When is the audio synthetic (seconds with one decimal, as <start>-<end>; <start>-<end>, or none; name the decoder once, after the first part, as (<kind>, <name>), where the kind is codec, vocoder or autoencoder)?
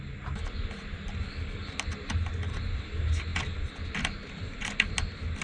none